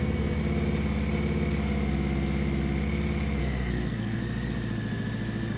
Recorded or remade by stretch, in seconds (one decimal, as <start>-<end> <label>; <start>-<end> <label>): 0.0-0.4 remade; 0.4-3.4 recorded; 3.4-4.2 remade; 4.2-5.6 recorded